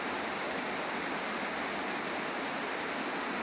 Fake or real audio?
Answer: real